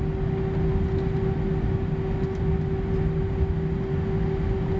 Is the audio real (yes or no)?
yes